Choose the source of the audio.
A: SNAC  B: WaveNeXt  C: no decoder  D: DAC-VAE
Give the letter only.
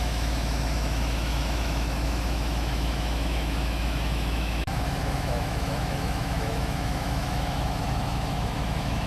D